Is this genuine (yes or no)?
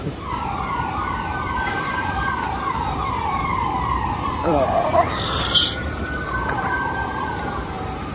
no